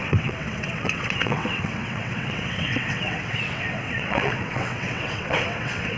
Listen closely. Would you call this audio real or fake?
fake